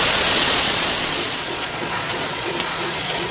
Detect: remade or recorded remade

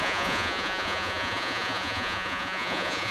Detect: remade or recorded remade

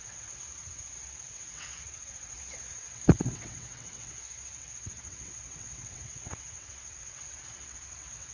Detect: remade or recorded remade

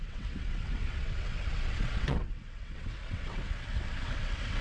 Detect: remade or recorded remade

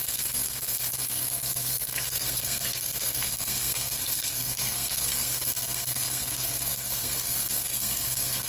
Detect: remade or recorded remade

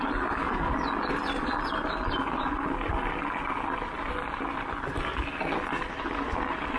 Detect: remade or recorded recorded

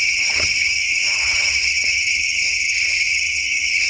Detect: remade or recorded remade